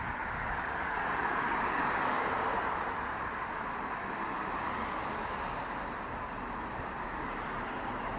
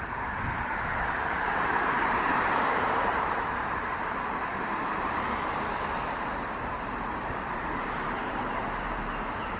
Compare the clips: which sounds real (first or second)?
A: first